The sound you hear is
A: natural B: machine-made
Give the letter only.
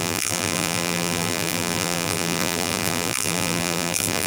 B